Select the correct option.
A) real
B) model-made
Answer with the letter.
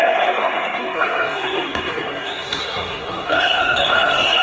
B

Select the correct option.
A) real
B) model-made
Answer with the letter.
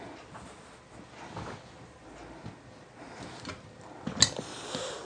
A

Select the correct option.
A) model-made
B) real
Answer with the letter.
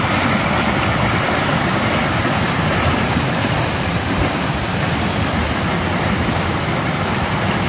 A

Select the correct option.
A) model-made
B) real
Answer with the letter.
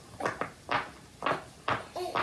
B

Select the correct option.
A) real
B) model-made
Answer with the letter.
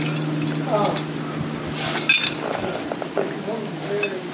A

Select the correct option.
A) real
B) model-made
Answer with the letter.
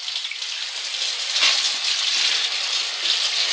A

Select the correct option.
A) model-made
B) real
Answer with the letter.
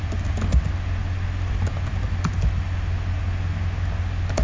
B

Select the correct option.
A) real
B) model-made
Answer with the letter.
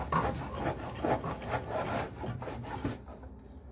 A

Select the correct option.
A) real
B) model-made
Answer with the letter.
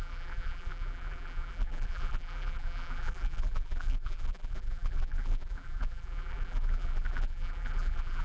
B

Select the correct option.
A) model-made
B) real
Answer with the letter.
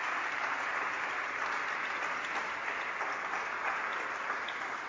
B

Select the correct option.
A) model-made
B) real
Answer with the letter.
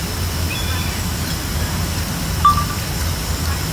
B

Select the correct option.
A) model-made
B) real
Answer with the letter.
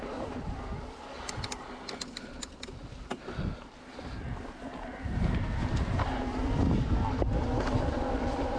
B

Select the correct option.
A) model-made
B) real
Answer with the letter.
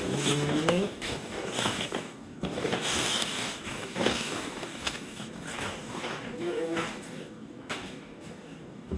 A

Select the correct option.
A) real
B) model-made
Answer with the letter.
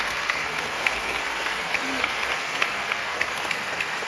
B